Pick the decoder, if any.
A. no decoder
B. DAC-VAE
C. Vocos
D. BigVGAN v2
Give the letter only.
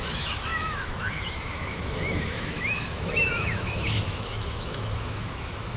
B